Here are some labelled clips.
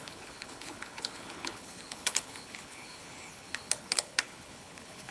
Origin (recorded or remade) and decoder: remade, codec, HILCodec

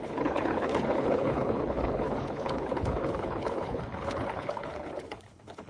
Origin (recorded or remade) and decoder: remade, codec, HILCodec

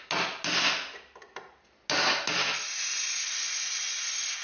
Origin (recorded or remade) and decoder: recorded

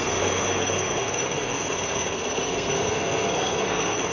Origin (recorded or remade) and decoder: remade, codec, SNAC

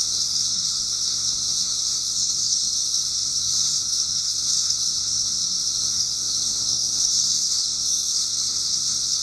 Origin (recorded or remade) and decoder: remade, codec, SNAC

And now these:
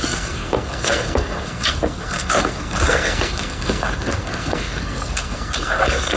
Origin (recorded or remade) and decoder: remade, codec, SNAC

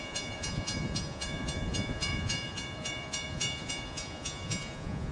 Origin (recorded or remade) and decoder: remade, vocoder, Vocos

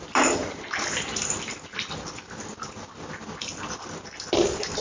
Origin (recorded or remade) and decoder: recorded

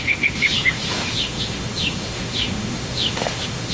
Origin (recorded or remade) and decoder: remade, autoencoder, DAC-VAE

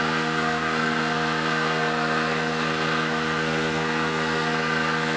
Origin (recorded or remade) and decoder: remade, codec, SNAC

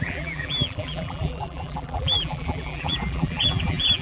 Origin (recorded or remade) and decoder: remade, vocoder, BigVGAN v2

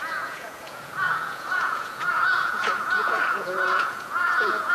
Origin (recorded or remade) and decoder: remade, vocoder, Vocos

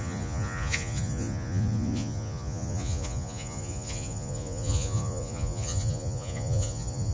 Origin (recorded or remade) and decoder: remade, vocoder, Vocos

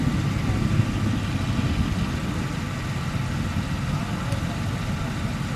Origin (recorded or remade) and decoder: recorded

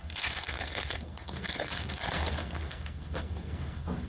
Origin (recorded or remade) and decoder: remade, codec, SNAC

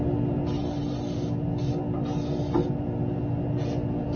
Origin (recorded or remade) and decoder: recorded